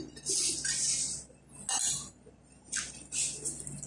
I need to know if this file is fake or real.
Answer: real